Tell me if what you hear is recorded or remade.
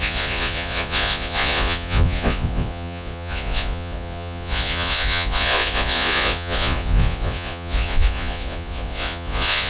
remade